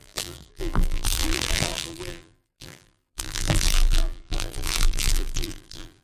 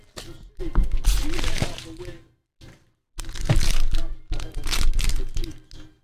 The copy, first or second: first